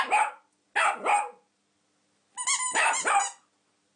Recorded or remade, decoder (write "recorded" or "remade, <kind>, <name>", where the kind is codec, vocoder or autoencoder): recorded